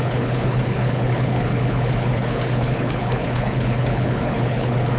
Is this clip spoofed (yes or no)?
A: yes